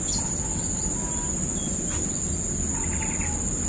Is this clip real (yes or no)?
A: yes